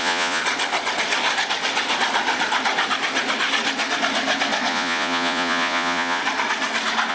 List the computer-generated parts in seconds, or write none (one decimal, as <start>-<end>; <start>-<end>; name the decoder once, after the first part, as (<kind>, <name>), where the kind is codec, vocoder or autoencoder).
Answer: 0.0-0.4 (vocoder, Vocos); 4.7-6.2